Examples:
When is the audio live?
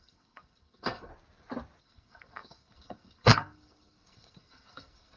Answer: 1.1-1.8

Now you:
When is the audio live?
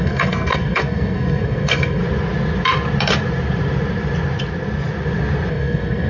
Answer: 2.0-5.5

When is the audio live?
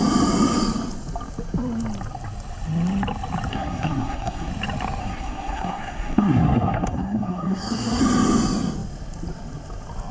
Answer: 0.0-3.5; 4.5-5.0; 8.0-10.1